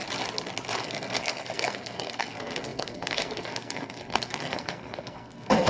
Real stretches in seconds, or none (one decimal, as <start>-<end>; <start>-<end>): 0.0-0.8